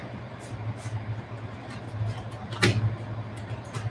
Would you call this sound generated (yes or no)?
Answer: no